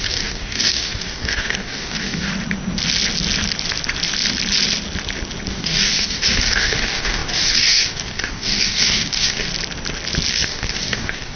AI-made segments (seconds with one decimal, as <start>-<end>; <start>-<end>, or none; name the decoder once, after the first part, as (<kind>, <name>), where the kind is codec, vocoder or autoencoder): 0.0-2.3 (codec, DAC); 5.5-9.5; 10.3-11.4